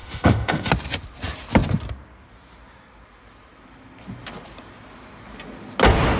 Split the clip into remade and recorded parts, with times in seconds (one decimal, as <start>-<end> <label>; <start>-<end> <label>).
0.0-0.7 remade; 0.7-6.2 recorded